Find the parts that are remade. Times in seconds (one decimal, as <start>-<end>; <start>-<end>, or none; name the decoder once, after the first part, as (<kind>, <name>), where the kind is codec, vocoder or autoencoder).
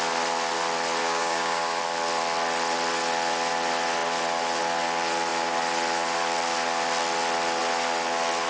1.0-1.8 (codec, DAC)